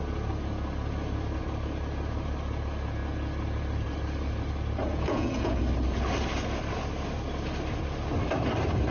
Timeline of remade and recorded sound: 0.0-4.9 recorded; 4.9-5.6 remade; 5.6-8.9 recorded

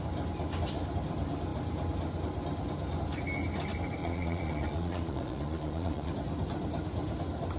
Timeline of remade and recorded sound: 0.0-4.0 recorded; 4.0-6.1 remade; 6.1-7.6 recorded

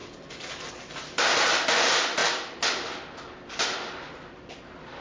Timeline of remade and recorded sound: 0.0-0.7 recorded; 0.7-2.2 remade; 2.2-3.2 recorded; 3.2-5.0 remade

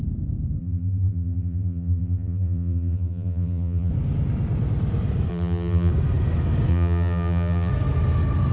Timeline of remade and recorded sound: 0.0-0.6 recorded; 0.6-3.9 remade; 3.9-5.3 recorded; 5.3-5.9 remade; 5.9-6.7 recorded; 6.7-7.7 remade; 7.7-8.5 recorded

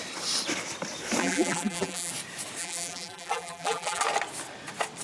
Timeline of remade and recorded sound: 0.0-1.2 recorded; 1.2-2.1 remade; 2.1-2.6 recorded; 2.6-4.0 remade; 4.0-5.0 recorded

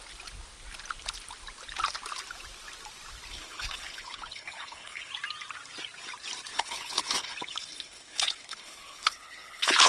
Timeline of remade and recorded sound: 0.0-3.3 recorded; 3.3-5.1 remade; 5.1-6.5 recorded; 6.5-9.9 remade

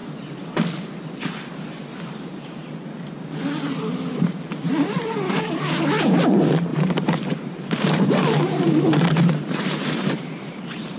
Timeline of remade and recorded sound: 0.0-1.8 recorded; 1.8-2.6 remade; 2.6-6.7 recorded; 6.7-11.0 remade